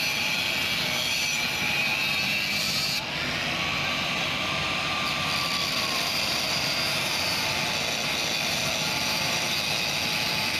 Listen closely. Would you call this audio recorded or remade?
recorded